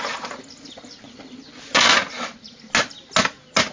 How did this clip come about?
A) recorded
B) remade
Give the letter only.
A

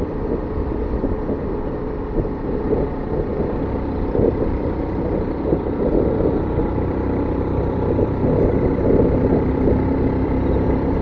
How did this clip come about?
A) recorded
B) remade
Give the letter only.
B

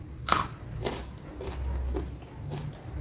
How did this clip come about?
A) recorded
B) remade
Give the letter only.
A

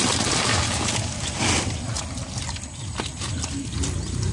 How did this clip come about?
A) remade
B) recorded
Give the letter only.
B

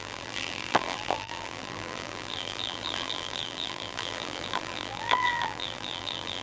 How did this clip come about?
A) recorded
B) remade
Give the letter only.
B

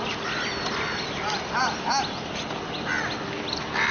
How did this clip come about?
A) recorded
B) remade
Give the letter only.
A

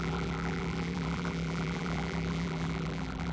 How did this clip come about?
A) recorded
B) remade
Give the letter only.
B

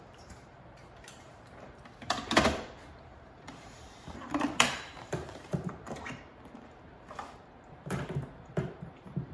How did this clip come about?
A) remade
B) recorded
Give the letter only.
A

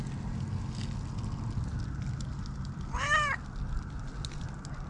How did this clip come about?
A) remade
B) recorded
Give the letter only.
B